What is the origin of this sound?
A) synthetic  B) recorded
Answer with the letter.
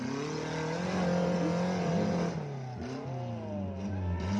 B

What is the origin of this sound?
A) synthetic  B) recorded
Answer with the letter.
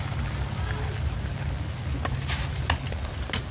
B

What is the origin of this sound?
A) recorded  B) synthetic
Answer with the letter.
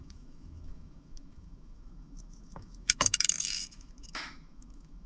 B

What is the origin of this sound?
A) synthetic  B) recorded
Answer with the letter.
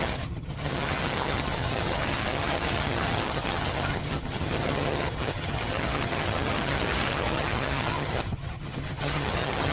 A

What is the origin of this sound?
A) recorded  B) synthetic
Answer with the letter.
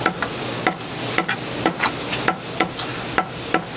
A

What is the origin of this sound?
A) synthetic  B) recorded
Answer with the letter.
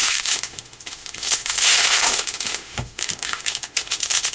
A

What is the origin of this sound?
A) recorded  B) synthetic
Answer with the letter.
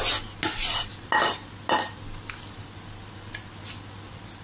A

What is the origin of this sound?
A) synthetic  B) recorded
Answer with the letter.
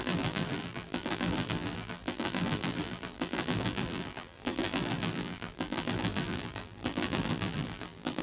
A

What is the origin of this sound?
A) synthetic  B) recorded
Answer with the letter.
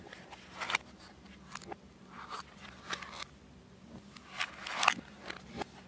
B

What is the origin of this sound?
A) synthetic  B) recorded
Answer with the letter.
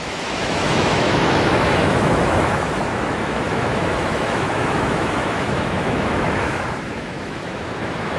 A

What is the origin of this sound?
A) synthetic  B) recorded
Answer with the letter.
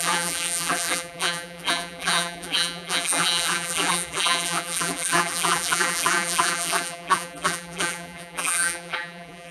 A